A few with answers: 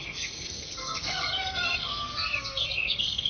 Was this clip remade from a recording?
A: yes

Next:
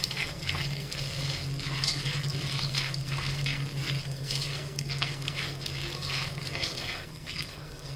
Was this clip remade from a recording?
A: yes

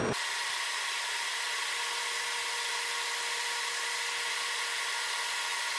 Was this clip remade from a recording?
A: no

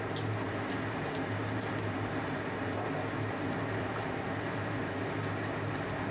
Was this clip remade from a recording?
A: no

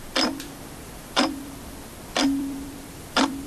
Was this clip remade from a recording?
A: yes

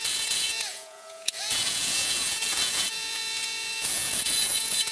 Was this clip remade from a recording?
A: yes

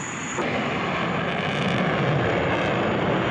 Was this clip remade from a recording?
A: no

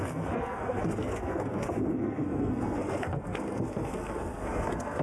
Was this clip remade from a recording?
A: yes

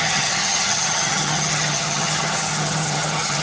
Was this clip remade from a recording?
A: yes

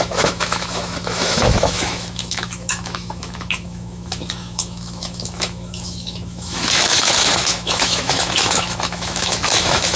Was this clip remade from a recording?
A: yes